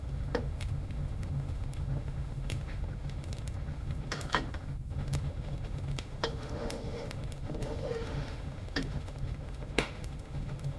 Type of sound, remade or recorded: remade